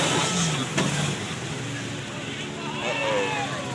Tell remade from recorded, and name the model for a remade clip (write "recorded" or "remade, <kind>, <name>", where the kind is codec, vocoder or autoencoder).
recorded